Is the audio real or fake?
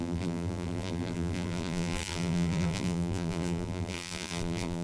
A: fake